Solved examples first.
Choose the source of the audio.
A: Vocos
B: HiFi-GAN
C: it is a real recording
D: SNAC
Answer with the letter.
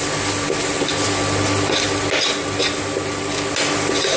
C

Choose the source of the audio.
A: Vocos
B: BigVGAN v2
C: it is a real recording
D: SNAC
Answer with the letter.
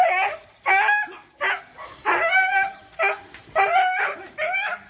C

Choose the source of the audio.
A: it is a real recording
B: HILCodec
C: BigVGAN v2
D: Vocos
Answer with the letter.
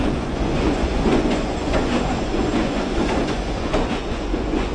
D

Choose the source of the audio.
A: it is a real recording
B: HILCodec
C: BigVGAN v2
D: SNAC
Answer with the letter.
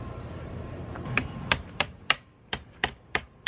C